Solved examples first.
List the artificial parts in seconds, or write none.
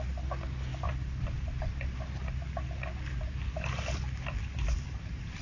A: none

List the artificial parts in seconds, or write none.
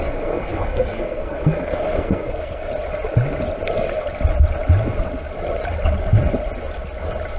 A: 0.0-2.7